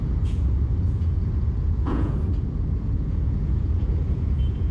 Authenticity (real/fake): fake